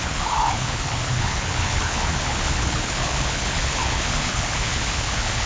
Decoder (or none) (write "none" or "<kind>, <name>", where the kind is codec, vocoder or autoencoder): codec, HILCodec